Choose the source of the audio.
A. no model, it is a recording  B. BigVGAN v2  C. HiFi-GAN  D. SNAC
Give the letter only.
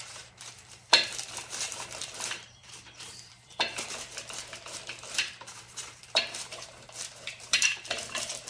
B